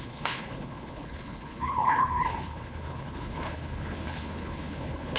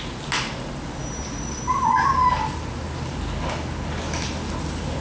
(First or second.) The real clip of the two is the second